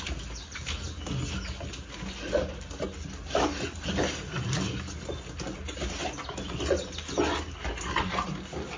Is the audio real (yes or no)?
yes